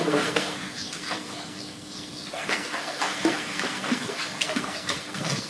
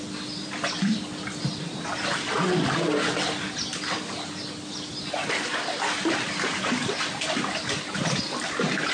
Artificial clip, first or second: first